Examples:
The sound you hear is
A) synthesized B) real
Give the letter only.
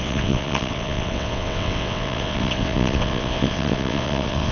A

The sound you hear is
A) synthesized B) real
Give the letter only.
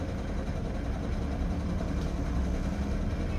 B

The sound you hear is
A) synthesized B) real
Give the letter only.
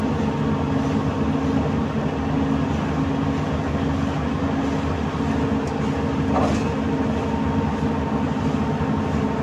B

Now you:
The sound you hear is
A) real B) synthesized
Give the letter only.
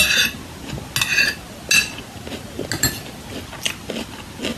A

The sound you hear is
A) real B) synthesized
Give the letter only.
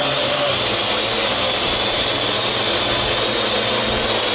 A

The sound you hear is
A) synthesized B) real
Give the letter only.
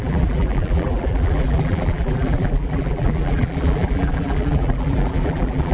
A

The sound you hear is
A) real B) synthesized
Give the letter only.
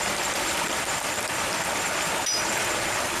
A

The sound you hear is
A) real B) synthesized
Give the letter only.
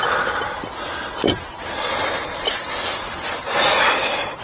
A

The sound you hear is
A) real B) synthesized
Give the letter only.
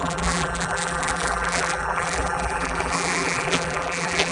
B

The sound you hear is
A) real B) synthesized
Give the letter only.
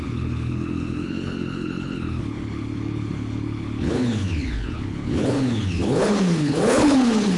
B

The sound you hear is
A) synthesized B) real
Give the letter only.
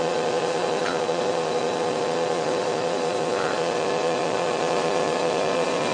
A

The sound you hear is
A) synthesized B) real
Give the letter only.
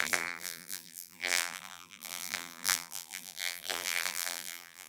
A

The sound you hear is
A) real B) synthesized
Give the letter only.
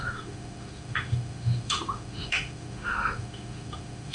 B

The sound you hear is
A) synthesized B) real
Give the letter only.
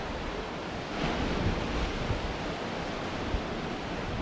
B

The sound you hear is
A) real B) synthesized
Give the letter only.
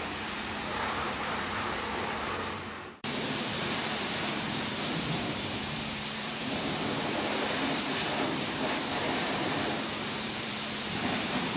B